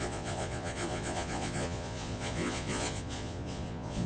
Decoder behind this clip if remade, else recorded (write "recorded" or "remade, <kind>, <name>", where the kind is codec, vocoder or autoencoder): remade, vocoder, Vocos